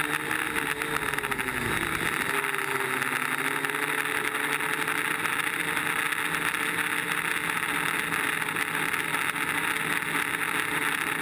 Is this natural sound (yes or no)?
yes